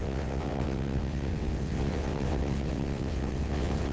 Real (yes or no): no